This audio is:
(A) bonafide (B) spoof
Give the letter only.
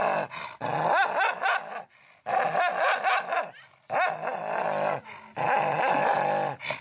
A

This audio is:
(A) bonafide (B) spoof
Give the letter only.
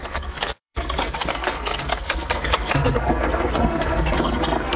B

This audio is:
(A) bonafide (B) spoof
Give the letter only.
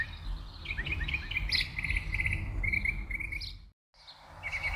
A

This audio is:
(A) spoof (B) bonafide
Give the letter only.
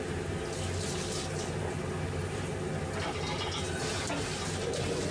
B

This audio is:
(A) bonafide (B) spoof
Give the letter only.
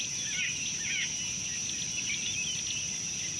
A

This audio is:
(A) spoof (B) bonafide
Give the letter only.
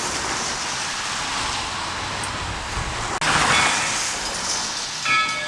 B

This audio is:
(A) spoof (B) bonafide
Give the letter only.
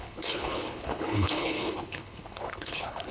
A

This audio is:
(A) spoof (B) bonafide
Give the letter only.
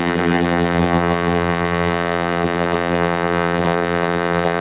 A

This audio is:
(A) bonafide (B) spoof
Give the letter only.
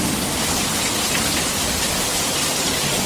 A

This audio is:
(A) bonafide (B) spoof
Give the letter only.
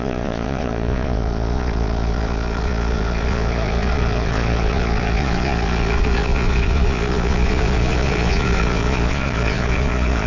B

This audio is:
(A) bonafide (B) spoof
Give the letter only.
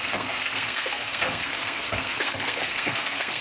B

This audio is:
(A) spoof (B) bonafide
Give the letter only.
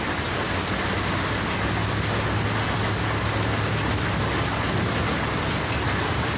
B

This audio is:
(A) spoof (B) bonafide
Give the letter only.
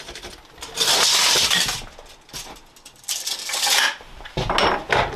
B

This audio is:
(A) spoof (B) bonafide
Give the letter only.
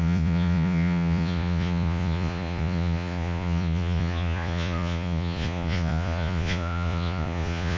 A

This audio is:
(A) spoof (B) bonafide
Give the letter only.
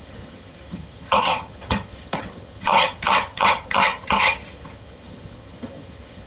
A